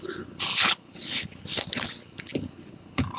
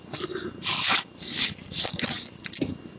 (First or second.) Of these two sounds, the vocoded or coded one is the first